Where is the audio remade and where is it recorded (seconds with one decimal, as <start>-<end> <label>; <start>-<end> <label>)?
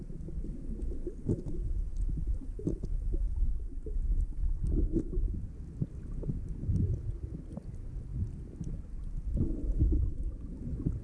0.0-11.0 recorded